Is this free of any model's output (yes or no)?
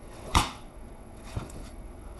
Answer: no